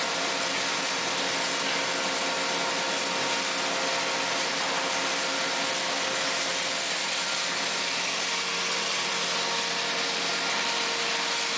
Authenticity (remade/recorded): recorded